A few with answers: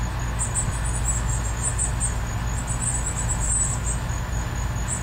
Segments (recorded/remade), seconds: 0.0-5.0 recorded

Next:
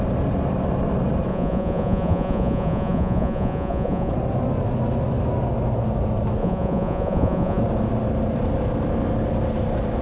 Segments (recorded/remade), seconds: 0.0-1.3 recorded; 1.3-4.1 remade; 4.1-6.4 recorded; 6.4-7.6 remade; 7.6-10.0 recorded